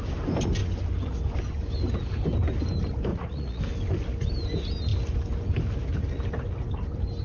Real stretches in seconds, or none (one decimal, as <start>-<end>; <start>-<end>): 0.0-3.1; 3.6-7.2

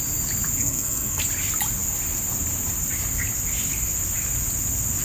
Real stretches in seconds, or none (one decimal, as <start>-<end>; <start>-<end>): 0.0-0.6; 1.2-5.0

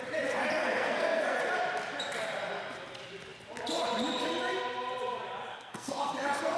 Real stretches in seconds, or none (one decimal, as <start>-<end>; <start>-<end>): 0.0-0.6; 1.4-5.5

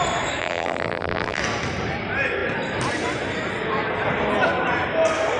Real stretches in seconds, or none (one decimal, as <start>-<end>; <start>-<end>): 0.0-0.4; 1.4-5.4

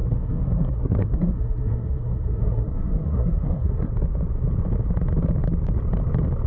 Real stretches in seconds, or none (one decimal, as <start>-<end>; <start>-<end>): 3.9-6.5

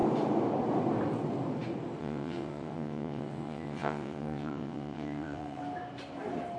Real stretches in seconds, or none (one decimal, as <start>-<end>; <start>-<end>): 0.0-2.0; 5.6-6.6

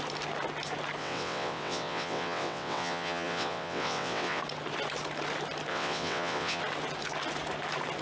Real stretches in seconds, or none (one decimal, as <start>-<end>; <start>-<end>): 0.0-1.0; 4.4-5.7; 6.6-8.0